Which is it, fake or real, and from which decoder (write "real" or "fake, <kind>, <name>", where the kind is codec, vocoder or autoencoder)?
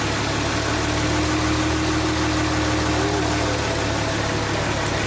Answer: real